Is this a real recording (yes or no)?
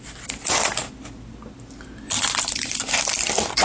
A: yes